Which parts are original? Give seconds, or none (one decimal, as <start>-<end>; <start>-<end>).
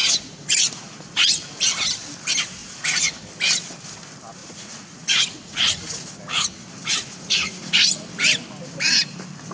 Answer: 1.6-2.6; 3.1-4.4; 6.1-6.8; 8.0-9.5